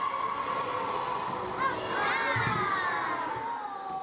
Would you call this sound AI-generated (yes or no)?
no